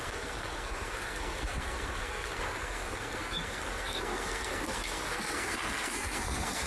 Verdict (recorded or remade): remade